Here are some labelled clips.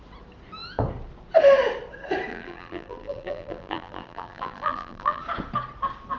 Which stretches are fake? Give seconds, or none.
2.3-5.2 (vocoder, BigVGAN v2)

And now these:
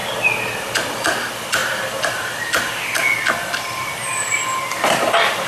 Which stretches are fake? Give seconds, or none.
0.7-1.6 (vocoder, BigVGAN v2); 3.1-5.5

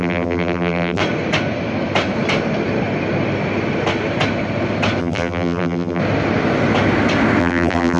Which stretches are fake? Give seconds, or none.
0.0-1.0 (vocoder, BigVGAN v2); 5.0-6.0; 7.4-8.0